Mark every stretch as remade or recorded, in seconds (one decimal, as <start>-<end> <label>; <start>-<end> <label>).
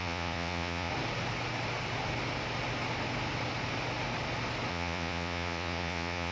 0.0-0.9 remade; 0.9-4.7 recorded; 4.7-6.3 remade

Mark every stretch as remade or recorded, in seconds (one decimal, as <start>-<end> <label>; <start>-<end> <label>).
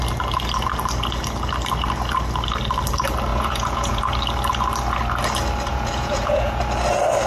0.0-3.3 recorded; 3.3-4.0 remade; 4.0-5.7 recorded; 5.7-6.6 remade; 6.6-7.3 recorded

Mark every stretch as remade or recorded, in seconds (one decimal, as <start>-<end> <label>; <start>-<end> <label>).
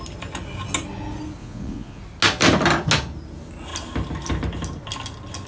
0.0-1.4 recorded; 1.4-2.0 remade; 2.0-5.5 recorded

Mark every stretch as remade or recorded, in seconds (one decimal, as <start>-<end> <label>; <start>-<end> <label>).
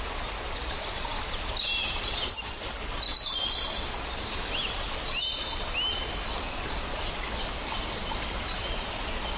0.0-9.4 recorded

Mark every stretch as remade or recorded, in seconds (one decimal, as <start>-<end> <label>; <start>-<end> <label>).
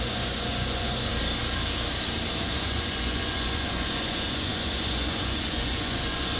0.0-1.1 remade; 1.1-2.4 recorded; 2.4-6.4 remade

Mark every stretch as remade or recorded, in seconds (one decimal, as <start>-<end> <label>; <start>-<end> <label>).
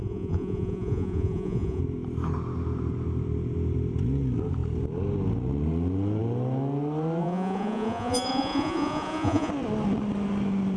0.0-1.8 remade; 1.8-7.2 recorded; 7.2-9.5 remade; 9.5-10.8 recorded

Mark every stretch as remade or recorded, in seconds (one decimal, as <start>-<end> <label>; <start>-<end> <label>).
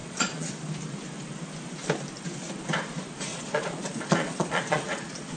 0.0-0.5 remade; 0.5-3.3 recorded; 3.3-5.4 remade